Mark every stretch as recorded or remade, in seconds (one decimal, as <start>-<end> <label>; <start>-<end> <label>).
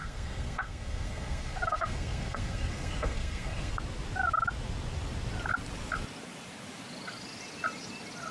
0.0-3.7 remade; 3.7-8.3 recorded